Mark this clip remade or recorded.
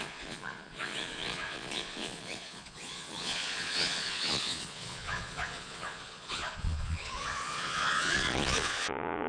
remade